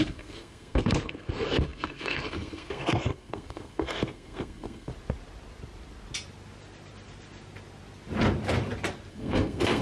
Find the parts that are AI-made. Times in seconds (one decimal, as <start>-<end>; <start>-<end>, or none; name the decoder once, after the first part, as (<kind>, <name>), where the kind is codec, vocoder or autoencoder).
0.0-4.9 (codec, SNAC); 9.1-9.8